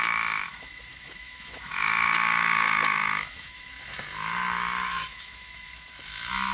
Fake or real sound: fake